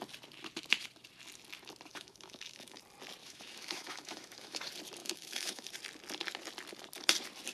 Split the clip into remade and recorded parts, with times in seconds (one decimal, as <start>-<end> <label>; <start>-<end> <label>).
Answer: 0.0-1.9 recorded; 1.9-2.8 remade; 2.8-3.2 recorded; 3.2-4.6 remade; 4.6-5.0 recorded; 5.0-5.7 remade; 5.7-7.5 recorded